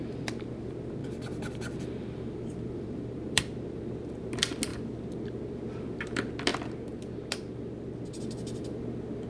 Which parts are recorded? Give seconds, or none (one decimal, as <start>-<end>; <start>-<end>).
0.0-1.0; 3.4-9.3